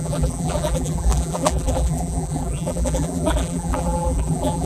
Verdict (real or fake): fake